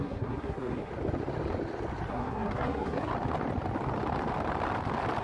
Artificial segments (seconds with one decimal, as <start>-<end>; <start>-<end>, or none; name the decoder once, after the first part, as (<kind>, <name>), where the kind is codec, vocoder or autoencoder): 0.0-0.9 (codec, SNAC); 2.1-3.1